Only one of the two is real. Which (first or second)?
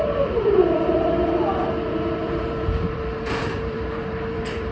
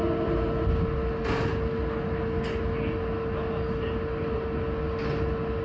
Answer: second